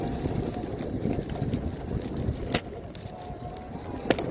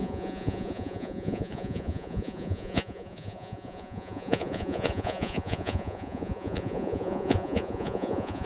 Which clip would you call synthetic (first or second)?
second